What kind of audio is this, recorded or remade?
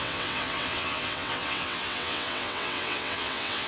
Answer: remade